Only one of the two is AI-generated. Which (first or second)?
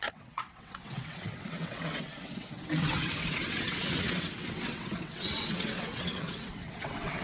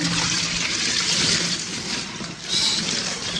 first